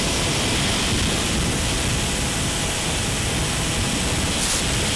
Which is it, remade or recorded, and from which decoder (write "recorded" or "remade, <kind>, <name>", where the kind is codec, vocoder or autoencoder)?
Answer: recorded